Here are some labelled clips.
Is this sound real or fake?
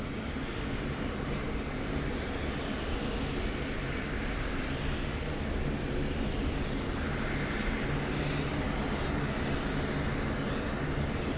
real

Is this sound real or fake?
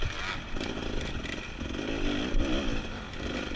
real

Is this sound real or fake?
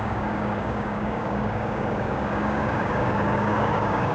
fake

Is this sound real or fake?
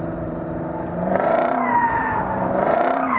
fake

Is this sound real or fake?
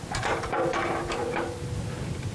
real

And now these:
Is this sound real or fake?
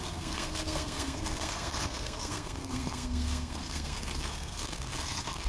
fake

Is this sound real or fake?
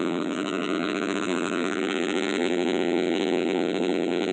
fake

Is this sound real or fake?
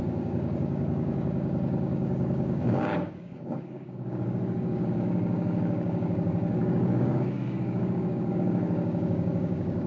fake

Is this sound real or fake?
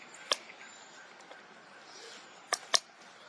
real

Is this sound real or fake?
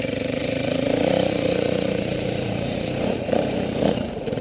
fake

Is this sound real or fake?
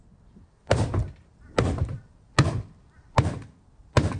real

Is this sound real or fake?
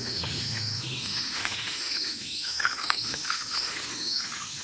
fake